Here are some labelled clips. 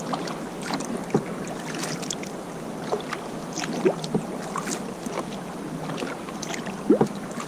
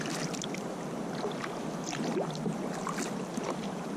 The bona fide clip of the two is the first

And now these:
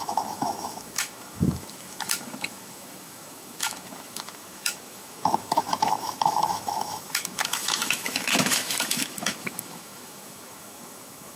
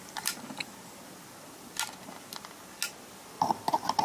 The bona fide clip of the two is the second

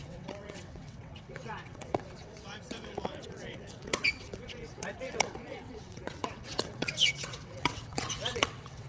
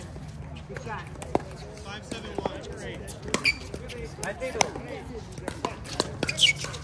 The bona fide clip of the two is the second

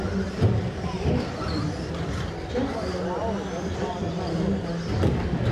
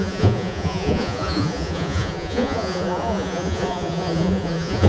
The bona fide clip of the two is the first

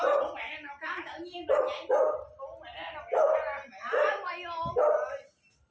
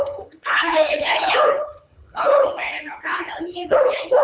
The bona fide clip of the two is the first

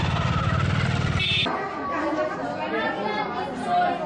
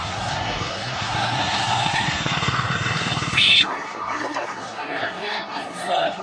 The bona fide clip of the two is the first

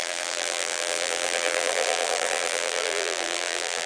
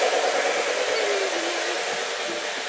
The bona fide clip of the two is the second